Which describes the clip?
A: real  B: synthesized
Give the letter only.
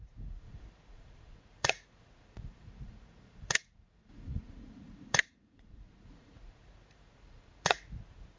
B